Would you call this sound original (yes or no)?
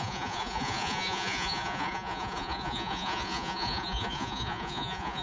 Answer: no